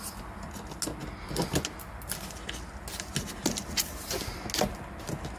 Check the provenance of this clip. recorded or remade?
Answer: recorded